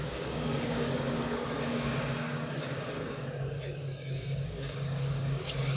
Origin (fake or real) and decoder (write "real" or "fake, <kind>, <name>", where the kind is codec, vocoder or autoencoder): fake, codec, DAC